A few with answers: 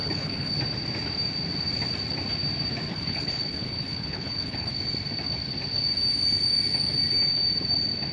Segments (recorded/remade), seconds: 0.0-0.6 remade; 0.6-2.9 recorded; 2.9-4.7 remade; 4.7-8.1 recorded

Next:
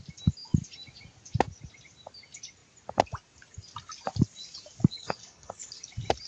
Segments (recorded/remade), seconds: 0.0-4.9 recorded; 4.9-5.8 remade; 5.8-6.3 recorded